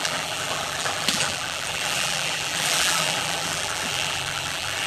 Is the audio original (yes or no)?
no